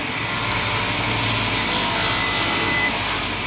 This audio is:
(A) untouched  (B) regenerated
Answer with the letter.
A